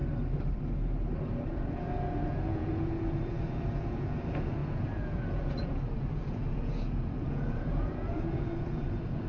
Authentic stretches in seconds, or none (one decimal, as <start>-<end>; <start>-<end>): 0.0-1.5